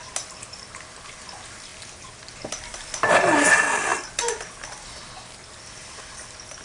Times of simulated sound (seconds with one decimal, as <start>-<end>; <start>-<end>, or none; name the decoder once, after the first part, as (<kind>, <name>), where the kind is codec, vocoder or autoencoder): none